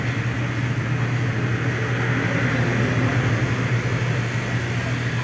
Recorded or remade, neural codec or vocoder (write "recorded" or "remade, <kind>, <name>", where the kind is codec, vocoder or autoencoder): recorded